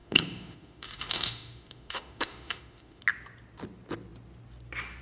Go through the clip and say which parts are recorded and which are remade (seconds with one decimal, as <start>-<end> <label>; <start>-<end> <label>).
0.0-3.0 remade; 3.0-5.0 recorded